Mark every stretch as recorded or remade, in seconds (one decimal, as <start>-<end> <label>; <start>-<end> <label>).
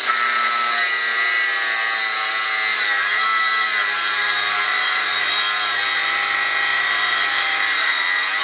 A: 0.0-2.7 recorded; 2.7-5.3 remade; 5.3-6.7 recorded; 6.7-8.0 remade; 8.0-8.4 recorded